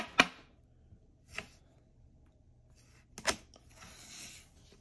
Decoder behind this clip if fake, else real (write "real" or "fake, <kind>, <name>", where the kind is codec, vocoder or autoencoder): real